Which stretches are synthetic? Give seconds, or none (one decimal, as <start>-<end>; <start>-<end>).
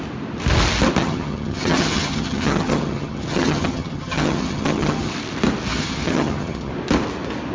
1.0-5.1; 5.7-6.7